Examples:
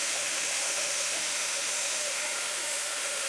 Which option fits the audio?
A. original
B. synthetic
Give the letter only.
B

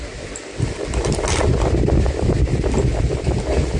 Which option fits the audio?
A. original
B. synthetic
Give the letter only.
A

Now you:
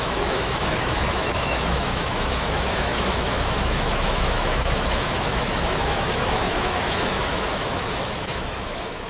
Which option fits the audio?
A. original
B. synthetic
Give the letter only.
B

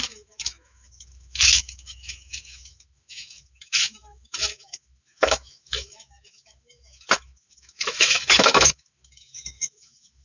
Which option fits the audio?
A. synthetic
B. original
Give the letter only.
A